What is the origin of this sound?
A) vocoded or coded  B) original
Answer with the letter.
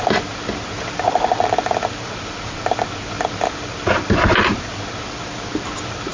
B